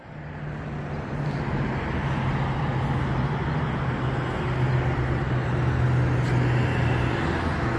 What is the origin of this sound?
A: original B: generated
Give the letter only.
A